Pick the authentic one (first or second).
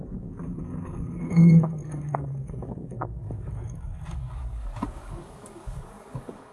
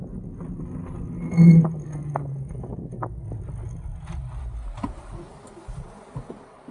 second